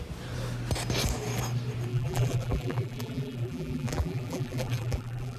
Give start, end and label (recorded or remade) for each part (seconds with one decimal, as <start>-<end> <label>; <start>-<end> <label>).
0.0-1.9 recorded; 1.9-5.4 remade

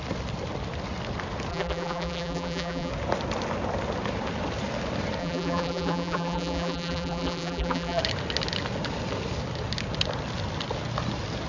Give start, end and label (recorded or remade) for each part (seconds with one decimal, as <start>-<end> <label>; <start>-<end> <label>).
0.0-1.5 recorded; 1.5-2.9 remade; 2.9-5.2 recorded; 5.2-8.0 remade; 8.0-11.5 recorded

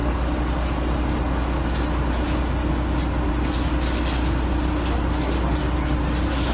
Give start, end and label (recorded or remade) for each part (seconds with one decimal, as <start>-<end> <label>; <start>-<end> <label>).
0.0-6.5 recorded